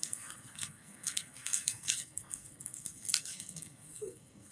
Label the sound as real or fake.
fake